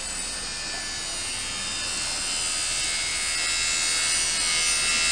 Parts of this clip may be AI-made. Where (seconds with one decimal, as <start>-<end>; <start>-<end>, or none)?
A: none